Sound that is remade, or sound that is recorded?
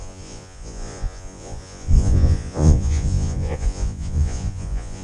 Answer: remade